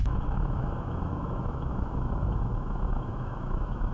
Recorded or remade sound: remade